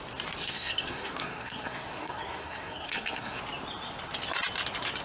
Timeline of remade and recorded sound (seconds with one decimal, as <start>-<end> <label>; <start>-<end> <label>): 0.0-0.4 recorded; 0.4-3.4 remade; 3.4-5.0 recorded

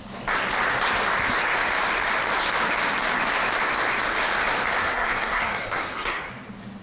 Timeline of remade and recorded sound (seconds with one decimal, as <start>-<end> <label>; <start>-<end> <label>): 0.0-4.8 recorded; 4.8-6.3 remade; 6.3-6.8 recorded

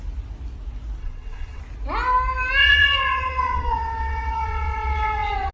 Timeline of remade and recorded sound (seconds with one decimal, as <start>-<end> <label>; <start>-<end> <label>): 0.0-1.0 recorded; 1.0-1.6 remade; 1.6-2.6 recorded; 2.6-5.5 remade

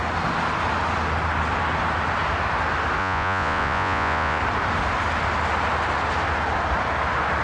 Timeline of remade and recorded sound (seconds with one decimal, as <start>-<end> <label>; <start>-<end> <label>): 0.0-3.0 recorded; 3.0-4.4 remade; 4.4-7.4 recorded

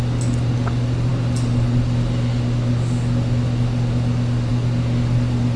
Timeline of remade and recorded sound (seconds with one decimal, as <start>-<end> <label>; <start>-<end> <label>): 0.0-5.6 recorded

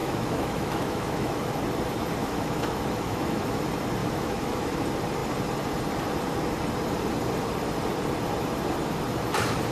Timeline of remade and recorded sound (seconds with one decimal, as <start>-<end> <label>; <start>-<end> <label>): 0.0-1.5 remade; 1.5-2.2 recorded; 2.2-3.6 remade; 3.6-4.0 recorded; 4.0-4.7 remade; 4.7-9.7 recorded